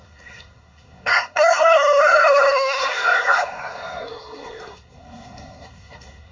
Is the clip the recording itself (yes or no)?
no